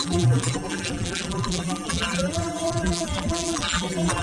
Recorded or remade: remade